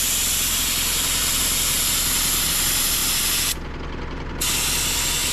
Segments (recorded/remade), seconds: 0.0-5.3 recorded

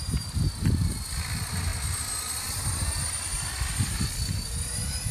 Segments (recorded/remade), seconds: 0.0-5.1 recorded

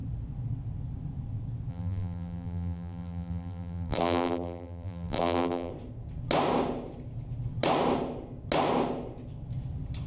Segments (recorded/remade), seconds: 0.0-1.7 recorded; 1.7-5.7 remade; 5.7-10.1 recorded

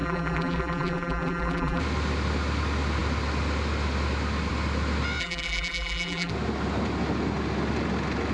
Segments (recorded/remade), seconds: 0.0-1.8 remade; 1.8-5.2 recorded; 5.2-6.3 remade; 6.3-8.3 recorded

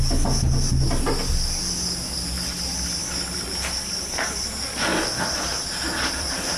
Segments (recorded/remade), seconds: 0.0-3.0 recorded; 3.0-3.5 remade; 3.5-4.9 recorded; 4.9-6.6 remade

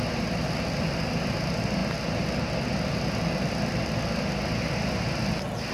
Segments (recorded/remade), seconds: 0.0-5.7 recorded

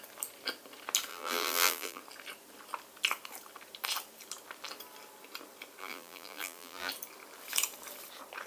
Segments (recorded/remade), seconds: 0.0-1.1 recorded; 1.1-2.0 remade; 2.0-5.8 recorded; 5.8-6.9 remade; 6.9-8.5 recorded